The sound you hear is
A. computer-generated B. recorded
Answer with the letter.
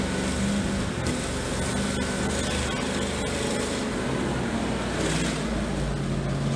B